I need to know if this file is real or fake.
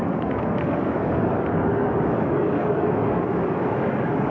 fake